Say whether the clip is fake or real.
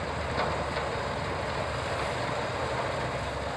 real